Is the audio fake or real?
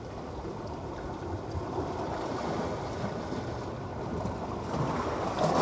real